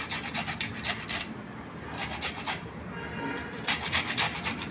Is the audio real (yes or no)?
yes